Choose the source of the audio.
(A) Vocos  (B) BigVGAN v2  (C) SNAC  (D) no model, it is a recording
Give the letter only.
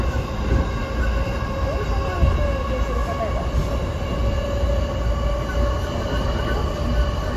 D